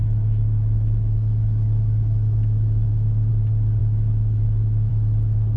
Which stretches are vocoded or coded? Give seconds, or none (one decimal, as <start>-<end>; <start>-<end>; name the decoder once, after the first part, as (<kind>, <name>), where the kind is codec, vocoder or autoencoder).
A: 0.0-3.3 (autoencoder, DAC-VAE); 3.8-4.9